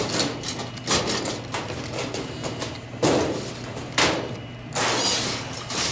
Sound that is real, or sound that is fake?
real